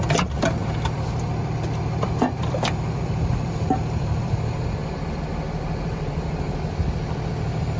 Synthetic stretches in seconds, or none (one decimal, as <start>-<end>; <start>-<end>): 0.0-7.8